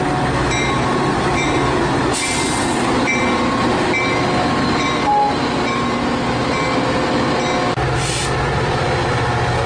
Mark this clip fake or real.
real